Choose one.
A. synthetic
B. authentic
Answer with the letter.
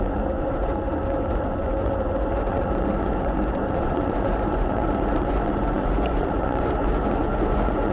A